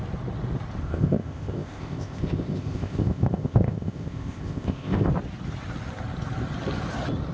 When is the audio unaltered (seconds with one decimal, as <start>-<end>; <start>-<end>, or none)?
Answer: 0.0-0.8; 5.1-7.3